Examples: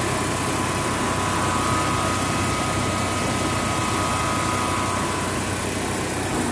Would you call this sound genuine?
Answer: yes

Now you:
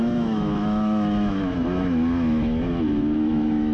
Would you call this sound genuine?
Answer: no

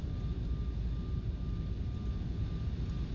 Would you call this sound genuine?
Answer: yes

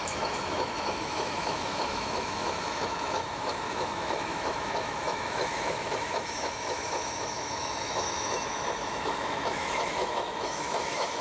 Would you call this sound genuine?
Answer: no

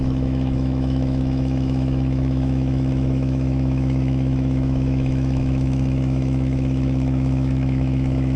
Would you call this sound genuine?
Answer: no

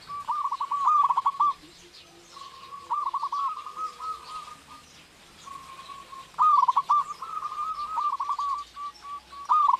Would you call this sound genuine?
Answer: yes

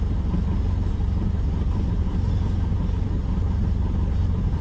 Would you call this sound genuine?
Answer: yes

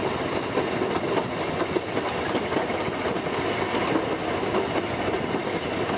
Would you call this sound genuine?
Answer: yes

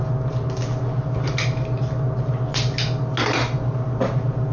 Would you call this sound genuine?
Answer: yes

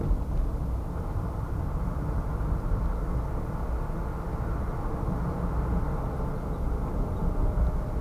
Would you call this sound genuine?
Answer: yes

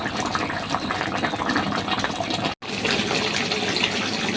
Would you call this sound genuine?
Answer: yes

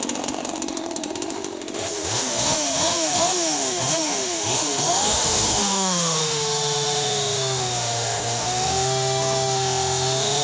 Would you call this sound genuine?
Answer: no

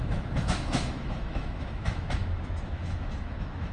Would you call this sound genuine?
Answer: no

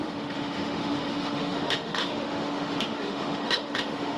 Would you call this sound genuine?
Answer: no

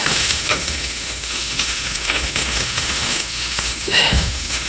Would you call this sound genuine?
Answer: no